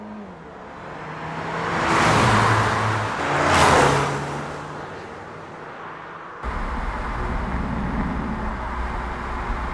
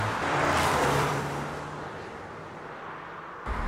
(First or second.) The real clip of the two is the first